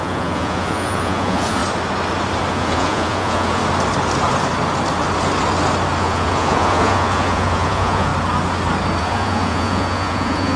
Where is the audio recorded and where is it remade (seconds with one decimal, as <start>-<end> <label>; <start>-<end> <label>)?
0.0-1.6 remade; 1.6-2.5 recorded; 2.5-3.6 remade; 3.6-6.0 recorded; 6.0-8.1 remade; 8.1-9.0 recorded; 9.0-10.6 remade